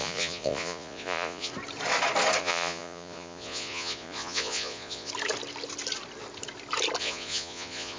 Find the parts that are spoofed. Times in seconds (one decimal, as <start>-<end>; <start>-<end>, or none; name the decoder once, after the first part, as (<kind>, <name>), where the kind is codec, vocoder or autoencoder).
0.0-1.5 (vocoder, Vocos); 2.4-5.1; 7.0-8.0